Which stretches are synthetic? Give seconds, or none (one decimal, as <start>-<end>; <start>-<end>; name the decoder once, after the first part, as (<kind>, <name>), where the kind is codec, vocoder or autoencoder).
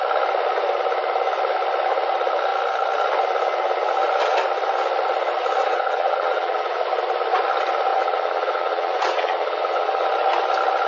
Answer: 5.6-6.7 (vocoder, WaveNeXt); 7.9-10.1